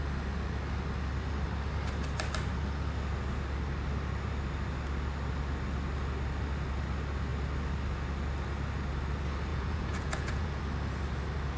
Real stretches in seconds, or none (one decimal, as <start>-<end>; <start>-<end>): 0.0-9.5; 10.6-11.6